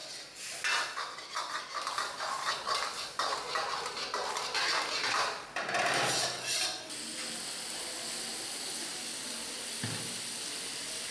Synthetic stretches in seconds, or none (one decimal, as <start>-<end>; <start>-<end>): none